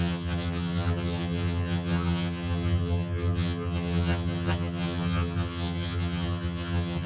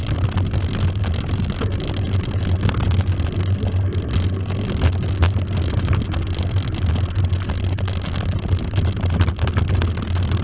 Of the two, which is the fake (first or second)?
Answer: first